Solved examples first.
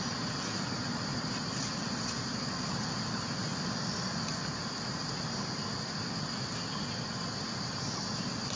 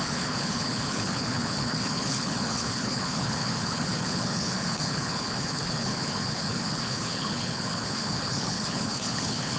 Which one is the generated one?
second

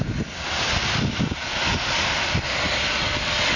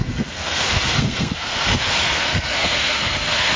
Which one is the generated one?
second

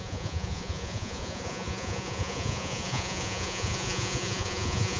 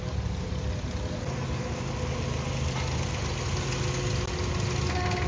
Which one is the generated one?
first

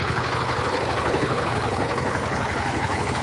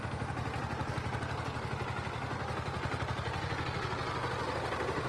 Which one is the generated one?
first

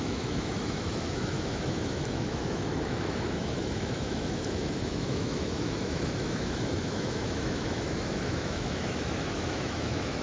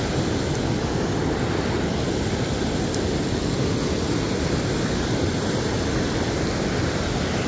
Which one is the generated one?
first